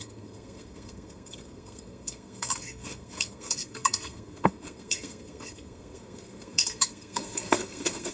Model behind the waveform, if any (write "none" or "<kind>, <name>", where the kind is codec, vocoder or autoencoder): codec, SNAC